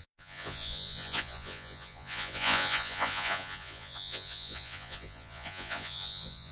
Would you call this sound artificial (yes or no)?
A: yes